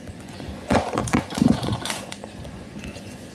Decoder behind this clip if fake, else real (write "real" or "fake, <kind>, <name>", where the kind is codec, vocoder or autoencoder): fake, vocoder, Vocos